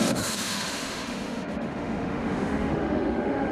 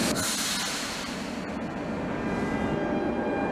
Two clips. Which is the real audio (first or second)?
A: second